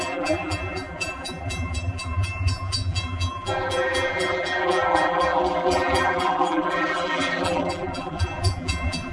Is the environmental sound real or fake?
fake